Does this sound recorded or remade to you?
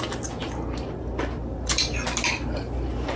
recorded